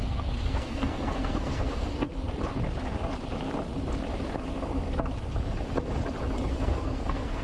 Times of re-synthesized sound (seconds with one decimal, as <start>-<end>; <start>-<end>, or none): 0.0-2.1; 6.5-7.4